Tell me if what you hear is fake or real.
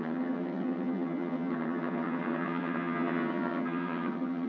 fake